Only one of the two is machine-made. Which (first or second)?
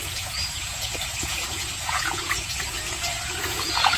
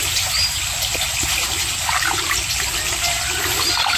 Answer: first